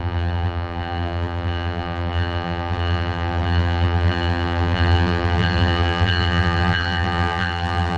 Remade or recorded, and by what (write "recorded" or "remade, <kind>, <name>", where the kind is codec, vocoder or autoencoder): remade, vocoder, BigVGAN v2